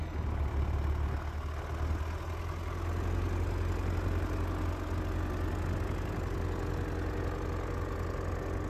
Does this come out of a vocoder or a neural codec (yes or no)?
no